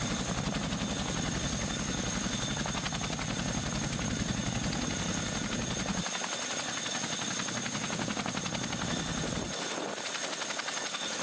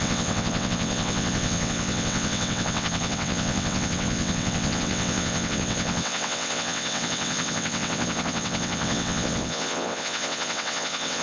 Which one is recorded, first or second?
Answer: first